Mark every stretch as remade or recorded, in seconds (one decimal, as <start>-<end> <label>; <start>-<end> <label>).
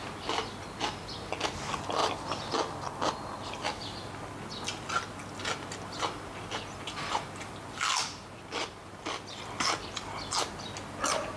0.0-11.4 recorded